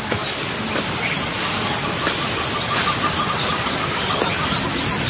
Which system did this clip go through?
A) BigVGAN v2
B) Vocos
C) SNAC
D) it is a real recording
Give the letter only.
D